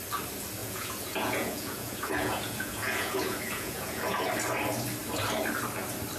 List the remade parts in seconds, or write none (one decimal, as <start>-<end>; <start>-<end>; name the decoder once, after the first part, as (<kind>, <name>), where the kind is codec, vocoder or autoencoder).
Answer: 0.6-4.3 (vocoder, Vocos)